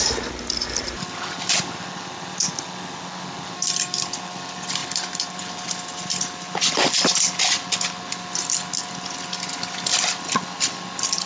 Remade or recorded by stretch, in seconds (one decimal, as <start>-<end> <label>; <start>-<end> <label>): 0.0-11.3 recorded